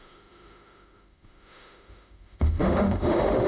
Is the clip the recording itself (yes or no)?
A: no